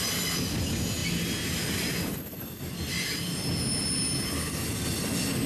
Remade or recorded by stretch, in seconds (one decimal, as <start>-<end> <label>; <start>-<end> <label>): 0.0-5.5 recorded